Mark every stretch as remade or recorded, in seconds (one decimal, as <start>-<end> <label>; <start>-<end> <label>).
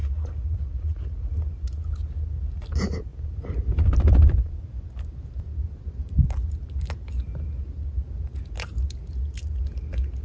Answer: 0.0-1.3 remade; 1.3-10.2 recorded